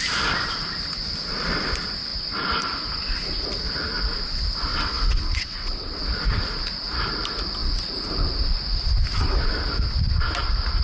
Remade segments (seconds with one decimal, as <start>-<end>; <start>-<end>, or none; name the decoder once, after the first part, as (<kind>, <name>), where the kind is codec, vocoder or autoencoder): 4.7-6.0 (vocoder, WaveNeXt)